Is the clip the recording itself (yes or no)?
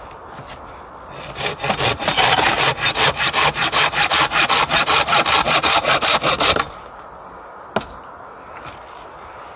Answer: yes